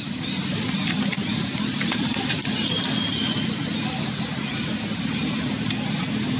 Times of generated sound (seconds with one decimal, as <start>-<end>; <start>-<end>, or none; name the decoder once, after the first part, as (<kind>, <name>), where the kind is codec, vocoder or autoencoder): none